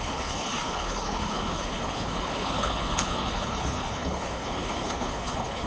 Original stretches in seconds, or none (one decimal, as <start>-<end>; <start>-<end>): none